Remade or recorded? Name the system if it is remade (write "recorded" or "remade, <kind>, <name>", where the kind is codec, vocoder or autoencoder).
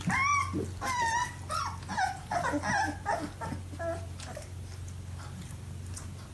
recorded